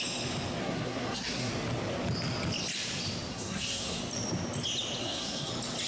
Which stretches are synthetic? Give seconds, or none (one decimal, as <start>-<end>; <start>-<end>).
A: 0.6-1.5; 3.3-4.0; 5.0-5.5